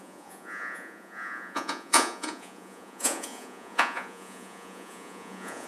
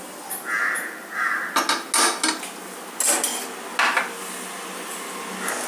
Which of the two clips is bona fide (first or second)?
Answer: second